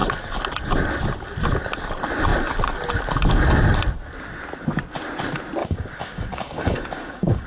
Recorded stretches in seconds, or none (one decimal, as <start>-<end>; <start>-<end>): 0.0-5.6